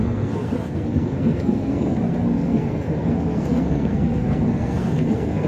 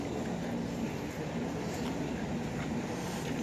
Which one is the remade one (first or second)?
first